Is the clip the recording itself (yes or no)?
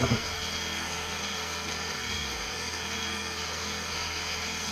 no